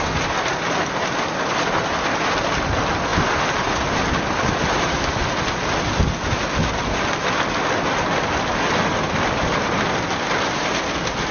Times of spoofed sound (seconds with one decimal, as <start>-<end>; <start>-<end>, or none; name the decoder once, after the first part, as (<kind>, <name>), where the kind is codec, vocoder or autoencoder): none